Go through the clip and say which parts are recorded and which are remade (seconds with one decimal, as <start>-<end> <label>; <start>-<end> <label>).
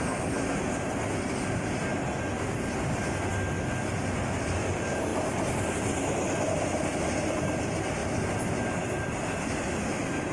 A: 0.0-10.3 recorded